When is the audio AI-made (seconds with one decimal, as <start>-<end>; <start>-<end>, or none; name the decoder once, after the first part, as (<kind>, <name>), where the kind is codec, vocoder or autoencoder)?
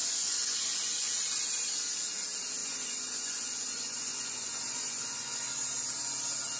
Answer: 0.0-1.1 (vocoder, Vocos); 2.6-5.5